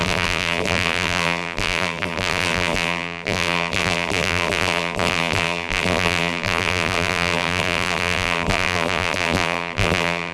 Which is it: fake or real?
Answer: fake